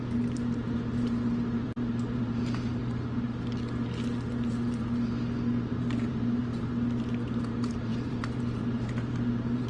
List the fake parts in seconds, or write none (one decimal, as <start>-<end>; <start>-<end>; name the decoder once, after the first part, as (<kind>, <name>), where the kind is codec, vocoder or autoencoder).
0.0-2.8 (vocoder, BigVGAN v2); 5.7-6.7; 7.3-9.7